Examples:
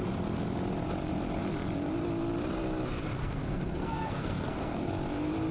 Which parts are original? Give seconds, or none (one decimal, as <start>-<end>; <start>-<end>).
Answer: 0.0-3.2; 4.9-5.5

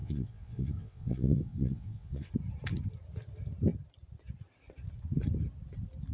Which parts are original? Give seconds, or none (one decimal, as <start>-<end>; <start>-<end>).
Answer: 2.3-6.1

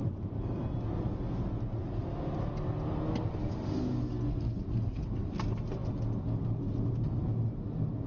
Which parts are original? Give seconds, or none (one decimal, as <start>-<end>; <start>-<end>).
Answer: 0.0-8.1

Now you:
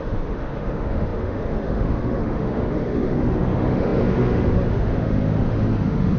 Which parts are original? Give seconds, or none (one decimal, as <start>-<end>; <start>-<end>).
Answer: none